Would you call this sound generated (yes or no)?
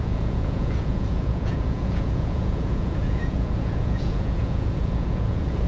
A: yes